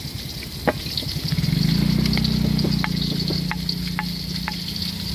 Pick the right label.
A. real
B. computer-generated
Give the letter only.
A